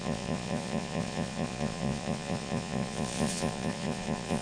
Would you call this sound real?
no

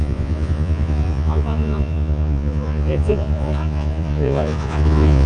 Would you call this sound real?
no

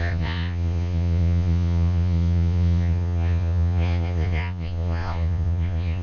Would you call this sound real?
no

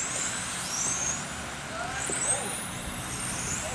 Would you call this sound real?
yes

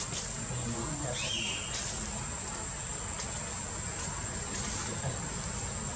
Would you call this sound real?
yes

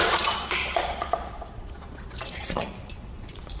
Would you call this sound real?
no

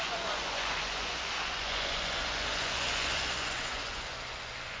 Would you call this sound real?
no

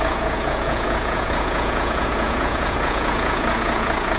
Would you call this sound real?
no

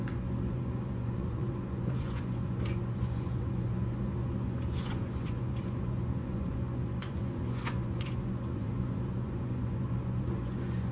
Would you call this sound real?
no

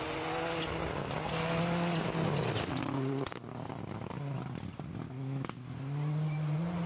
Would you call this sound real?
yes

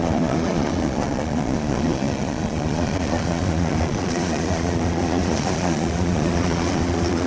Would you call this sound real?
no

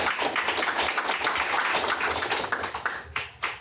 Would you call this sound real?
yes